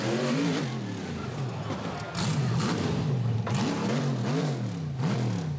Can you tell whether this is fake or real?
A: real